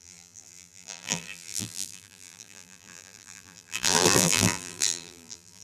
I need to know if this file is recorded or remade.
remade